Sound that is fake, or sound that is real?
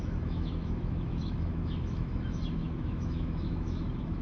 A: fake